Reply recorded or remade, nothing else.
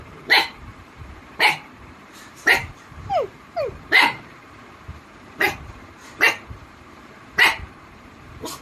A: remade